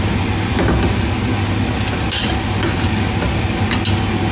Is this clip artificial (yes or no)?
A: no